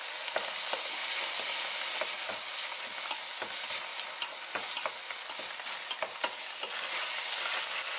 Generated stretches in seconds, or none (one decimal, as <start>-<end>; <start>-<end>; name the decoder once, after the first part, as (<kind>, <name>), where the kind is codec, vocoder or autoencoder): none